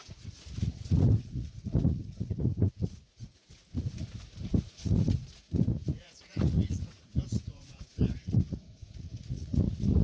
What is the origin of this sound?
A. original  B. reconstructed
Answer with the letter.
B